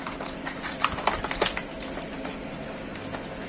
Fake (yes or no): no